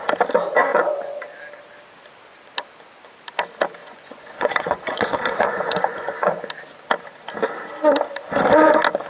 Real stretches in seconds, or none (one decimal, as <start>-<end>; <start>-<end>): 0.0-0.7; 1.2-3.8; 6.5-9.1

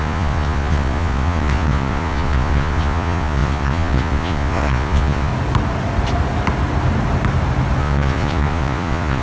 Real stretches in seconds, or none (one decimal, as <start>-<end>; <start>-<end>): 5.3-7.8

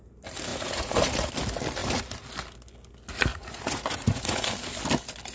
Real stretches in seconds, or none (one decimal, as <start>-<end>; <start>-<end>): 0.0-0.5; 1.3-3.3; 4.5-5.3

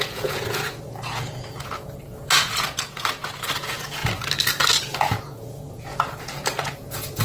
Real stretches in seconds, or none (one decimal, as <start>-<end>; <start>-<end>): 4.0-4.8